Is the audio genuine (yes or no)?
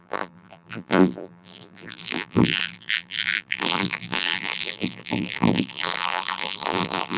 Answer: no